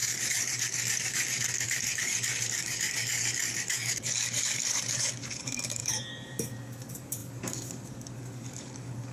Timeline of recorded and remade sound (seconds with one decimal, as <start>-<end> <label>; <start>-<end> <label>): 0.0-9.1 remade